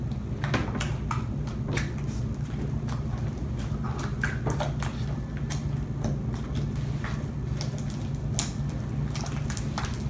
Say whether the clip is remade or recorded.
recorded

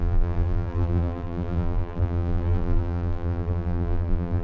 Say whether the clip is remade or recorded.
remade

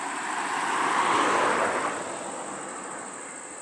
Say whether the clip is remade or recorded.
recorded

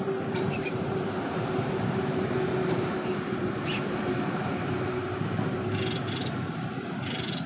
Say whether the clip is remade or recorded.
remade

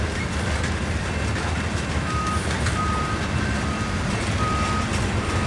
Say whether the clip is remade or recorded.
recorded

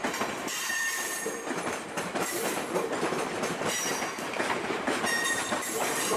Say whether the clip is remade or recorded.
remade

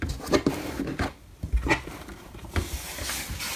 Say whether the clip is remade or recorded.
recorded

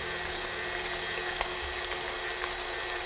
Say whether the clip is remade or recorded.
recorded